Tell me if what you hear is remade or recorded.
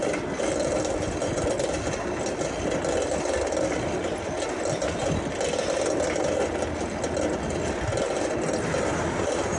recorded